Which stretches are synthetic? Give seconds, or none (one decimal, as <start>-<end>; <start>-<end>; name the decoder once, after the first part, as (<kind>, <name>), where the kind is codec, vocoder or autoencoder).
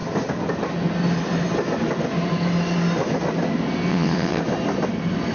3.9-4.4 (vocoder, WaveNeXt)